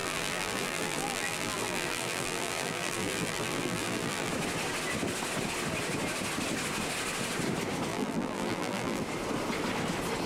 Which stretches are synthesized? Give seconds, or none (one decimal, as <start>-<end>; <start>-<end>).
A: 0.0-4.3; 7.9-9.0